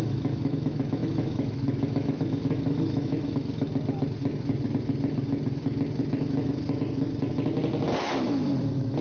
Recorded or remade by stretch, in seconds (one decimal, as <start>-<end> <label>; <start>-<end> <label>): 0.0-3.7 remade; 3.7-8.0 recorded; 8.0-9.0 remade